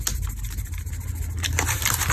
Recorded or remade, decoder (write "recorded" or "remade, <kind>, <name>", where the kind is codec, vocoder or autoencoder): recorded